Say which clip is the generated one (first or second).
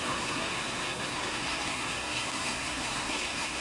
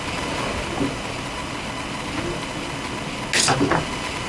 first